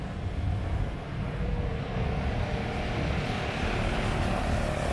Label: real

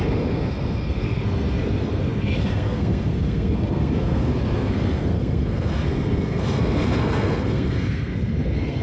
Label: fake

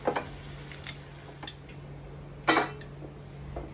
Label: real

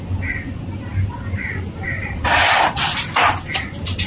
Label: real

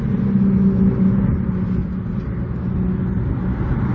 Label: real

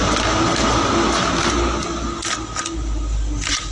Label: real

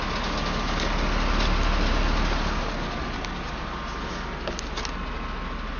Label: real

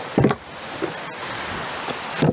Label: real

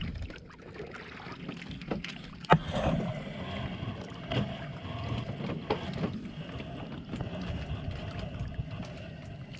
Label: real